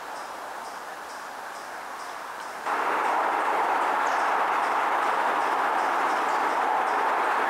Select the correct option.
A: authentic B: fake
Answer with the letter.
A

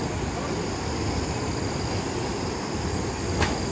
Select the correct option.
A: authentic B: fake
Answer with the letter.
A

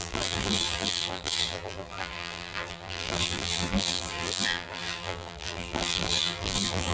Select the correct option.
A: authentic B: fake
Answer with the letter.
B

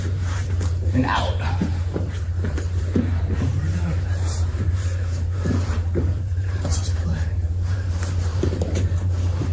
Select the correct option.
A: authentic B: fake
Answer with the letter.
B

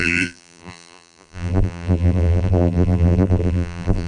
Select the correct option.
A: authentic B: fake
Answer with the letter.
B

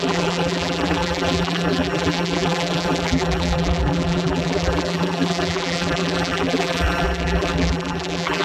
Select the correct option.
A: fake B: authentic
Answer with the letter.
A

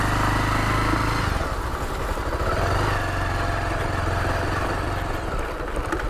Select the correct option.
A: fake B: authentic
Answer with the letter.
B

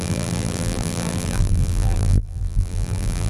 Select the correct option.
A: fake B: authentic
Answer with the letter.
A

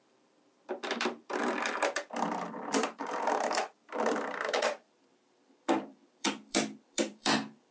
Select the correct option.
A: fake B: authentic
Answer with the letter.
A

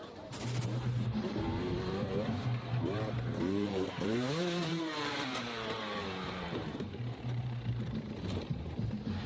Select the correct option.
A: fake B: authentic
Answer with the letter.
A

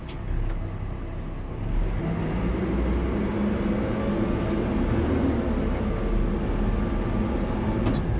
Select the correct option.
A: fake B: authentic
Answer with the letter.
B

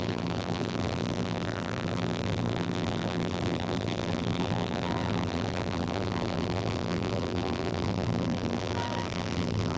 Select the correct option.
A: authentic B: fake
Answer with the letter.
B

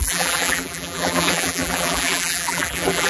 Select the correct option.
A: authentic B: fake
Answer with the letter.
B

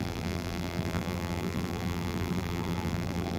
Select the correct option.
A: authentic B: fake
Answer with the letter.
B